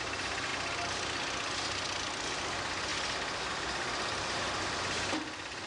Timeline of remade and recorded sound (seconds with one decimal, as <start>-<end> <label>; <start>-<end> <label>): 0.0-5.7 recorded